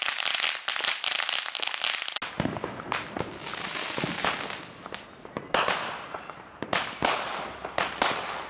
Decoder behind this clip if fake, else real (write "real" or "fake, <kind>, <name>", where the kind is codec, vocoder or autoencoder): real